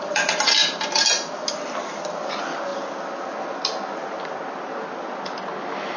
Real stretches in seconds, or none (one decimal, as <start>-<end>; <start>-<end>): 0.0-6.0